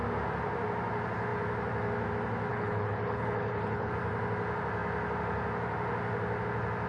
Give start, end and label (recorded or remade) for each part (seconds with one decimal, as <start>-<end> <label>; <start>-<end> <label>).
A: 0.0-2.5 recorded; 2.5-3.9 remade; 3.9-6.9 recorded